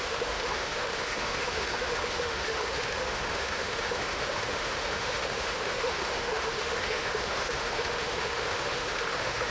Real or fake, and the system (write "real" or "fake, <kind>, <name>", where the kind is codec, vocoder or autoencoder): fake, autoencoder, DAC-VAE